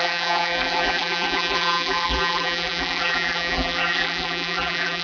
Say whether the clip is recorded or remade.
remade